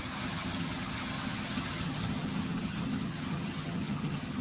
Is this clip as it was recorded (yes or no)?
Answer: no